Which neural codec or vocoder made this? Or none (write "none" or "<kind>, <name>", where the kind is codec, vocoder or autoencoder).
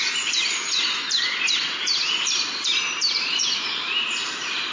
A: vocoder, BigVGAN v2